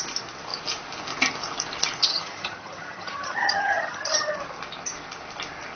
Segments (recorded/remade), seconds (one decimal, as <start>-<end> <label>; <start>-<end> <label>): 0.0-2.1 recorded; 2.1-4.4 remade; 4.4-5.8 recorded